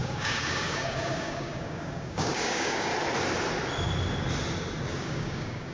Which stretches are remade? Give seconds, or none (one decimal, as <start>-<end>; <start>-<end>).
0.0-2.9; 5.0-5.7